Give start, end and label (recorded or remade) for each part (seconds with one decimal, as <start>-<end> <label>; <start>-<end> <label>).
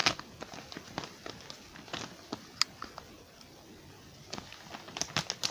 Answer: 0.0-5.5 recorded